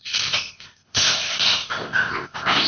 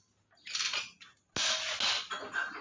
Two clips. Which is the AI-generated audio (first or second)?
first